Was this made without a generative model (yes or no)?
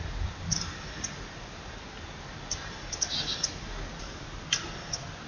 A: yes